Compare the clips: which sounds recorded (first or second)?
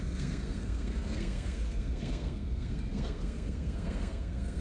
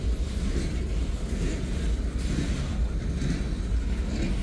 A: second